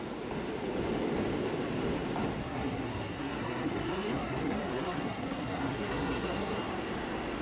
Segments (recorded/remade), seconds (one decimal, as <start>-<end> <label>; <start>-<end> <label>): 0.0-2.4 recorded; 2.4-6.7 remade; 6.7-7.4 recorded